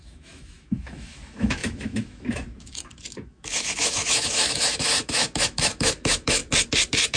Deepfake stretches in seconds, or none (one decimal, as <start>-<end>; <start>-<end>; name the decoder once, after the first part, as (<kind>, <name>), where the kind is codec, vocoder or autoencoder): 0.0-6.4 (autoencoder, DAC-VAE)